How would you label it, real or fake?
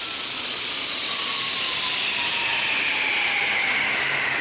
real